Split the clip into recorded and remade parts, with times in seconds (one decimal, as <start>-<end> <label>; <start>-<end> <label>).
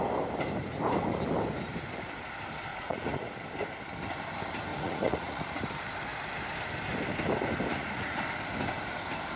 0.0-2.7 recorded; 2.7-3.3 remade; 3.3-4.7 recorded; 4.7-5.6 remade; 5.6-7.7 recorded; 7.7-8.2 remade; 8.2-9.4 recorded